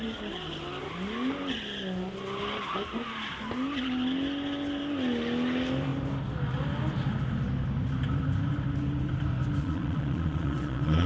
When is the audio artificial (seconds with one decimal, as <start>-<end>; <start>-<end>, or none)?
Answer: 9.6-11.1